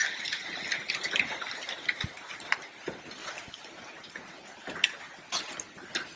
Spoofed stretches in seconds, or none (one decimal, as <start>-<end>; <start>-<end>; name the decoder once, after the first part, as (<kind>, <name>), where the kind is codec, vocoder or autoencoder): none